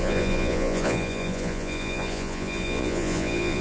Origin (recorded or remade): remade